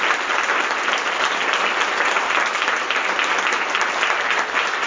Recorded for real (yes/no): yes